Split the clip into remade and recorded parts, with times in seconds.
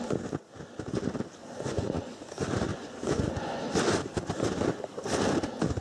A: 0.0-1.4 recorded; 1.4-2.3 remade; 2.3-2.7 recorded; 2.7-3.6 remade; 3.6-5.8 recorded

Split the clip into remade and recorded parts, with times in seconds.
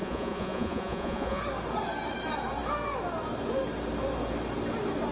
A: 0.0-1.4 remade; 1.4-5.1 recorded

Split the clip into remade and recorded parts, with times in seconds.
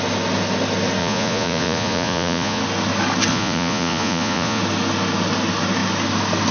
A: 0.0-1.0 recorded; 1.0-2.6 remade; 2.6-3.3 recorded; 3.3-4.6 remade; 4.6-6.5 recorded